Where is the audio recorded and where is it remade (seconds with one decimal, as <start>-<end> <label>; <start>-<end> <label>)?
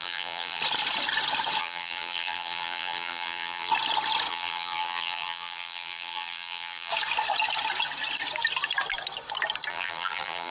0.0-0.6 remade; 0.6-1.6 recorded; 1.6-3.7 remade; 3.7-4.3 recorded; 4.3-6.9 remade; 6.9-9.7 recorded; 9.7-10.5 remade